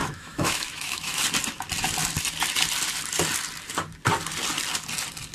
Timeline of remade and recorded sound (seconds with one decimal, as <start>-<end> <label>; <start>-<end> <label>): 0.0-1.2 remade; 1.2-5.3 recorded